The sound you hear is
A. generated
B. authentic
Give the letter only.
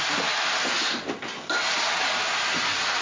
B